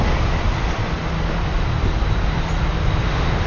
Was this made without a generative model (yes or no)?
yes